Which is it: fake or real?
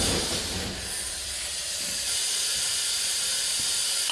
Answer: real